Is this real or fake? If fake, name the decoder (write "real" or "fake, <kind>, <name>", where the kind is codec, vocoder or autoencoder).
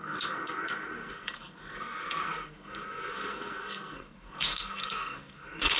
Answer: fake, codec, SNAC